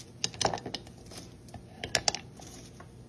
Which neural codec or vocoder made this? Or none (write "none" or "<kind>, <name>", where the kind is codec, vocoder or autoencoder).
none